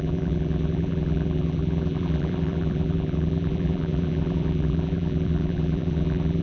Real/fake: fake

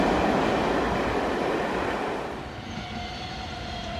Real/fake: real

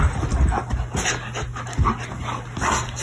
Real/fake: real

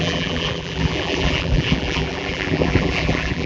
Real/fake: fake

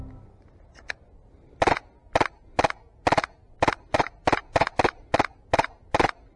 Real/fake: real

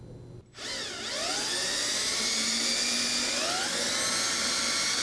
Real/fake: real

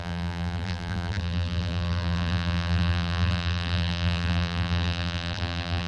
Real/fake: fake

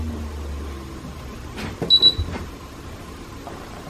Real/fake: real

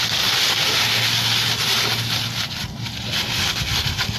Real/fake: real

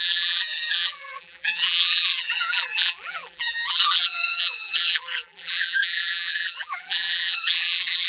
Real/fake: fake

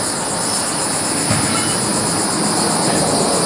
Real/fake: fake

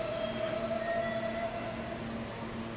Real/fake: real